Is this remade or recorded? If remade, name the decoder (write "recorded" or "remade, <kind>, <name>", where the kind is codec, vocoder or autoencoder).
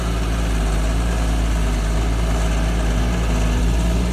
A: recorded